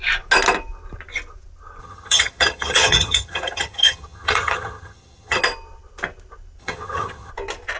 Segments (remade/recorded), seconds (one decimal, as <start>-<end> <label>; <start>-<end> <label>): 0.0-1.8 recorded; 1.8-5.4 remade; 5.4-6.6 recorded; 6.6-7.3 remade; 7.3-7.8 recorded